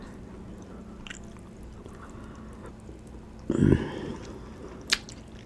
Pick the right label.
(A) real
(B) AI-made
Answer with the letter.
A